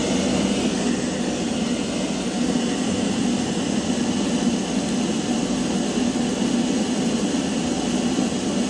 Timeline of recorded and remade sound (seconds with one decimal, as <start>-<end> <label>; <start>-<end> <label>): 0.0-8.7 recorded

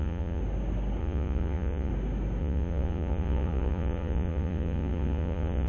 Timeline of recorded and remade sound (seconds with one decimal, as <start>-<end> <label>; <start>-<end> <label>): 0.0-0.4 remade; 0.4-1.0 recorded; 1.0-1.9 remade; 1.9-2.4 recorded; 2.4-5.7 remade

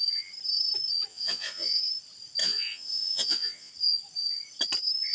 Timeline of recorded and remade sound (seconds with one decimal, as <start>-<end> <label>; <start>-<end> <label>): 0.0-1.1 recorded; 1.1-1.8 remade; 1.8-2.4 recorded; 2.4-3.7 remade; 3.7-5.1 recorded

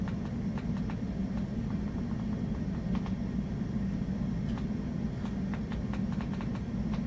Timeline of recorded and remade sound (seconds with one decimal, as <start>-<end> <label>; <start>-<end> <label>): 0.0-7.1 recorded